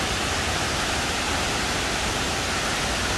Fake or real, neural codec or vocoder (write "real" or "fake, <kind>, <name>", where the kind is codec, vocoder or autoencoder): real